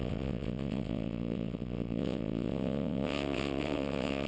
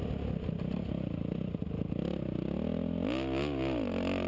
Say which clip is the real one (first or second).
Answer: second